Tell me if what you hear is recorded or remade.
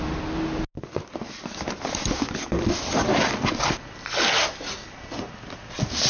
recorded